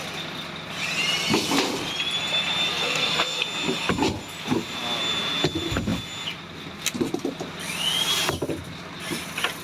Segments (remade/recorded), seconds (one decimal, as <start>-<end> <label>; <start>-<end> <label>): 0.0-2.7 recorded; 2.7-3.4 remade; 3.4-9.6 recorded